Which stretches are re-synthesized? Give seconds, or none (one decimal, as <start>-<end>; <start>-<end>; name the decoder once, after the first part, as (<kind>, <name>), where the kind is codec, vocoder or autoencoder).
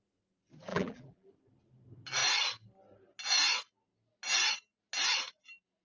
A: 0.7-1.3 (vocoder, BigVGAN v2)